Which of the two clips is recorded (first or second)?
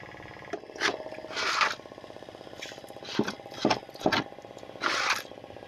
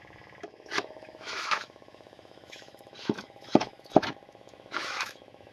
first